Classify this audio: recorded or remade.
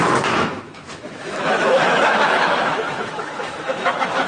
remade